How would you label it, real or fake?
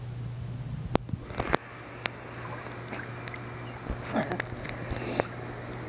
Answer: real